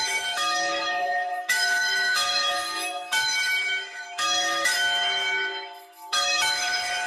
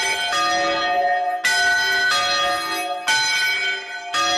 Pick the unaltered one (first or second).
second